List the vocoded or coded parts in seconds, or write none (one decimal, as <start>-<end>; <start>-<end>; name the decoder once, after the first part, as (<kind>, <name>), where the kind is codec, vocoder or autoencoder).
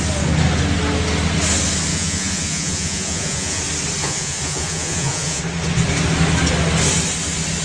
1.9-3.6 (vocoder, Vocos); 4.0-5.4